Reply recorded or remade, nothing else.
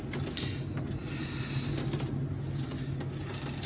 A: recorded